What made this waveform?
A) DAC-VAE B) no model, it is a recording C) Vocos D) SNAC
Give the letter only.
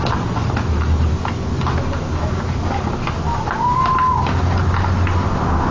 B